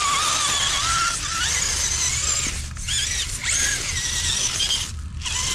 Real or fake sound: real